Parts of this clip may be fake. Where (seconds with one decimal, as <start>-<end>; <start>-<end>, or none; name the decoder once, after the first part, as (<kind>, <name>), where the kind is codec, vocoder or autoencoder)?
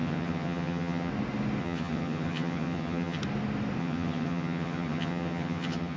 0.0-1.1 (vocoder, HiFi-GAN); 1.6-3.2; 3.8-6.0